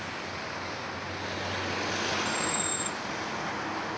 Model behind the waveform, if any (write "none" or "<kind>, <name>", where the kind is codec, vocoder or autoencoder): none